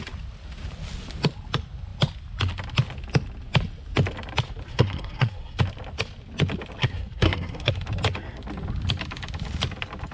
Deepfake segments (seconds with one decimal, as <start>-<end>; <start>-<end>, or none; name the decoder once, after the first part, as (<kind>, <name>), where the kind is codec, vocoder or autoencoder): 4.7-5.6 (codec, SNAC); 6.8-7.7